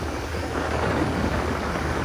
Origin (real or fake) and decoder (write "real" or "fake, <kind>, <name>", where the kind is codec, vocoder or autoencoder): fake, codec, DAC